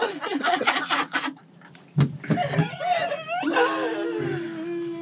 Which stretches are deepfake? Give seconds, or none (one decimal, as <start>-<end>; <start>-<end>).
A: 0.0-1.4